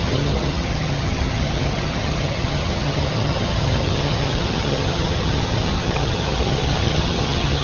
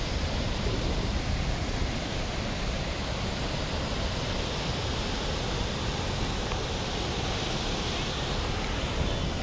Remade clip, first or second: first